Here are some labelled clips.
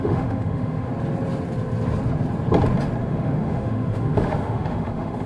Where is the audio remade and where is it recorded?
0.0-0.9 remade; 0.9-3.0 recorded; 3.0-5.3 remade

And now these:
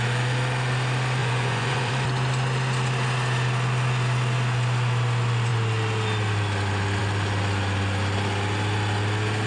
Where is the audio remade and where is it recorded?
0.0-1.2 recorded; 1.2-1.9 remade; 1.9-9.5 recorded

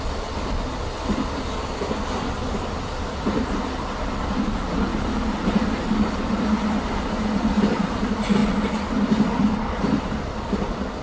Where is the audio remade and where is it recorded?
0.0-11.0 recorded

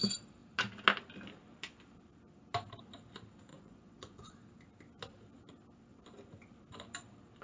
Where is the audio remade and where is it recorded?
0.0-3.5 recorded; 3.5-4.3 remade; 4.3-7.4 recorded

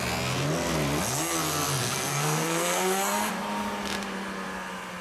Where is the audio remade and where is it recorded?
0.0-1.8 recorded; 1.8-3.3 remade; 3.3-5.0 recorded

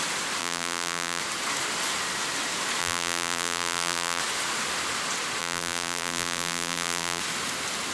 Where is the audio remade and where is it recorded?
0.0-0.4 recorded; 0.4-1.2 remade; 1.2-2.8 recorded; 2.8-4.2 remade; 4.2-5.4 recorded; 5.4-7.2 remade; 7.2-7.9 recorded